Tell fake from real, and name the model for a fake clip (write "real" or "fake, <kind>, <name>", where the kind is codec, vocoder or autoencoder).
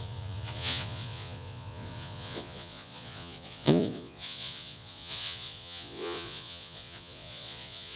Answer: fake, vocoder, Vocos